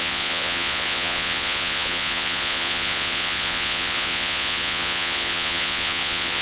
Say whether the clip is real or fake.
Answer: fake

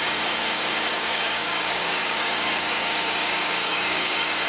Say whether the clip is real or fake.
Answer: fake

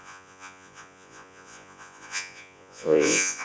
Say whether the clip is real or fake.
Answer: fake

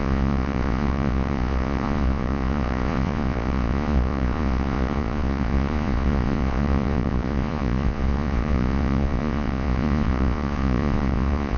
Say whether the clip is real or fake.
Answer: fake